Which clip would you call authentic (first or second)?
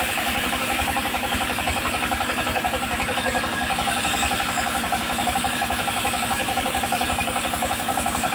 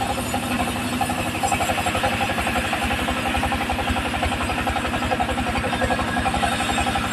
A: second